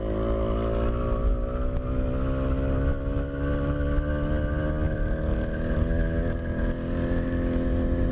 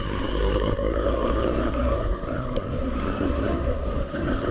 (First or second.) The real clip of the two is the first